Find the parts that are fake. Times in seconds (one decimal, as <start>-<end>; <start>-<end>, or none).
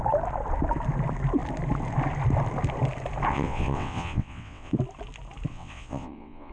3.3-4.7; 5.5-6.5